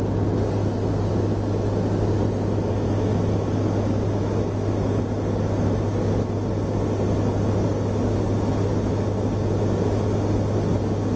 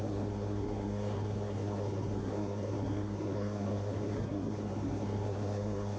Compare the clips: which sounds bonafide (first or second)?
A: first